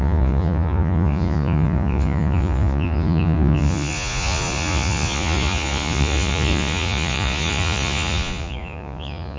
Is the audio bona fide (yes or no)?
no